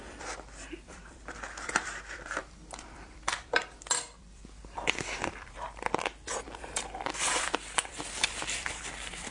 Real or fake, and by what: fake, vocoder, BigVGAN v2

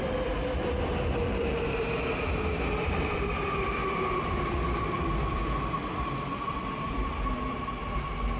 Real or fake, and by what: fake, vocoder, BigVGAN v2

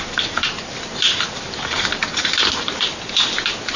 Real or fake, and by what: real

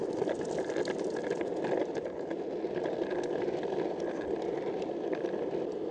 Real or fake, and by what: fake, vocoder, BigVGAN v2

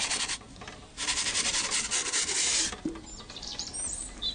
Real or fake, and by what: fake, vocoder, BigVGAN v2